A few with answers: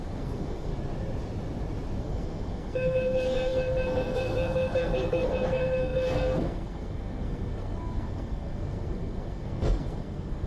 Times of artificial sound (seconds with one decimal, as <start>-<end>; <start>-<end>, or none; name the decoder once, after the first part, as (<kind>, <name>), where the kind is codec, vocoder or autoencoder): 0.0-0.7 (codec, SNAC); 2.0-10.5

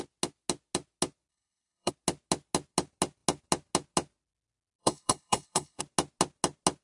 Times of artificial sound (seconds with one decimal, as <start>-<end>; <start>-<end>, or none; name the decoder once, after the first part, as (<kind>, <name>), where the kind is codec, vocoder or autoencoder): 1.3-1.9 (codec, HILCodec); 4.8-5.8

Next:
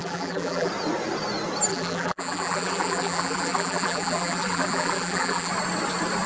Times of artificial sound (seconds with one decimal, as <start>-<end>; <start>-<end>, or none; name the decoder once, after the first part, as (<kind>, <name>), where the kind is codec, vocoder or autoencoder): 0.0-0.7 (vocoder, BigVGAN v2); 1.7-5.5